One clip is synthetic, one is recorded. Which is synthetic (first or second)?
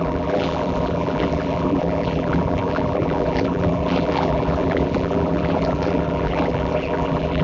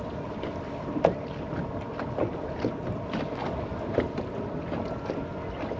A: first